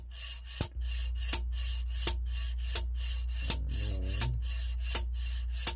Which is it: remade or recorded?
recorded